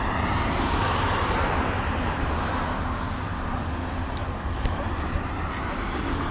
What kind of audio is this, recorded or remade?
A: recorded